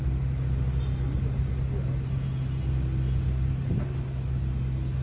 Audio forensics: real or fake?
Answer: real